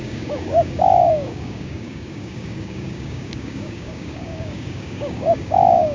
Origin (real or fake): fake